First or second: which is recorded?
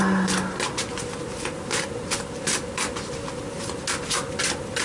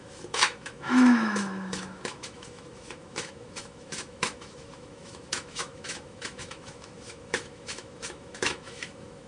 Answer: first